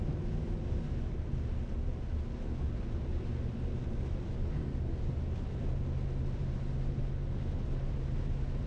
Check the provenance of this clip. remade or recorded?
recorded